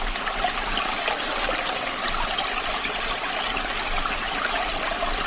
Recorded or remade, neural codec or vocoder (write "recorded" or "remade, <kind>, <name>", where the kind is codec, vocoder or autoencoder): recorded